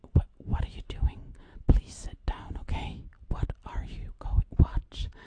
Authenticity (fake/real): real